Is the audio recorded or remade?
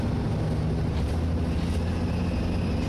recorded